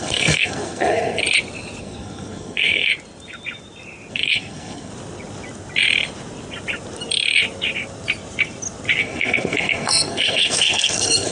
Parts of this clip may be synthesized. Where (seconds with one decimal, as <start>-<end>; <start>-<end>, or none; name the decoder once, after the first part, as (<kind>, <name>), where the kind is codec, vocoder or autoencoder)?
0.0-1.2 (codec, SNAC); 1.8-2.9; 4.1-4.9; 9.0-11.3